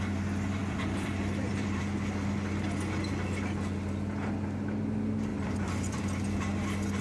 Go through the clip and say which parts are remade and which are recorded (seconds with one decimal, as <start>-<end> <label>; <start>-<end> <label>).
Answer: 0.0-0.6 recorded; 0.6-1.8 remade; 1.8-5.3 recorded; 5.3-6.0 remade; 6.0-7.0 recorded